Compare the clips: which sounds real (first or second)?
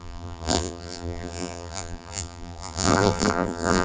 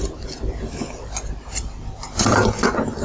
second